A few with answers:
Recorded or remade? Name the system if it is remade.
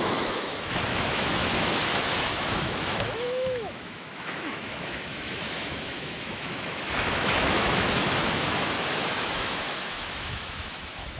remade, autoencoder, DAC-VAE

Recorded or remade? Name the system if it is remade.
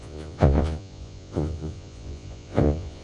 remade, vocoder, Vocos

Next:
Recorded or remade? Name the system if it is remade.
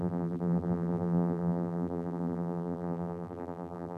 remade, vocoder, BigVGAN v2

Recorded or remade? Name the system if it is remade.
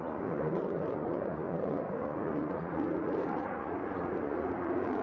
remade, vocoder, Vocos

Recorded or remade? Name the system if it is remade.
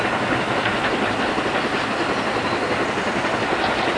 recorded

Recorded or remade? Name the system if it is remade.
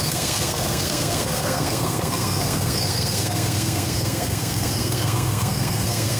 remade, codec, SNAC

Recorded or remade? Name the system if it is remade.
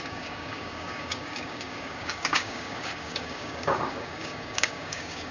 remade, codec, DAC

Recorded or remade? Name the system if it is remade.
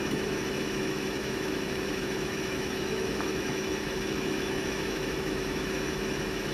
remade, autoencoder, DAC-VAE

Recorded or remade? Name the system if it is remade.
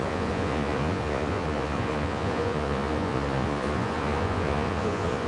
remade, vocoder, Vocos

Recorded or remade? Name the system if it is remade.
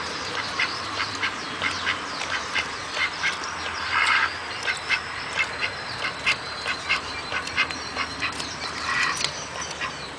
remade, vocoder, BigVGAN v2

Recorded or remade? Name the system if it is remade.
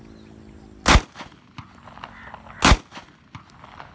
recorded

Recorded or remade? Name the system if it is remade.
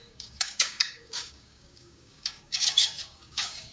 remade, codec, DAC